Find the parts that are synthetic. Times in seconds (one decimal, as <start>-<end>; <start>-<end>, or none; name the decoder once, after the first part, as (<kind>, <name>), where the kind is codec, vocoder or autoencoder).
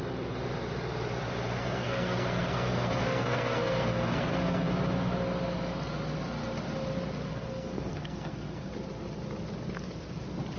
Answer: 1.6-4.7 (codec, SNAC); 7.3-8.7